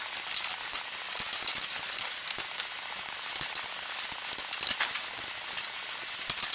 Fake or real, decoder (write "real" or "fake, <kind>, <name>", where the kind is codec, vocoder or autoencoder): real